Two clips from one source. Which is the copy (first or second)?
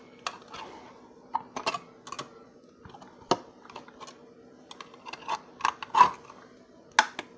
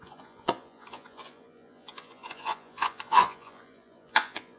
second